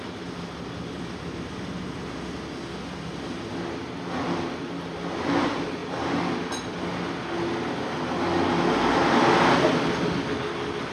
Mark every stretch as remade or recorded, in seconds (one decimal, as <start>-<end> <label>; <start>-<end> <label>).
0.0-10.9 recorded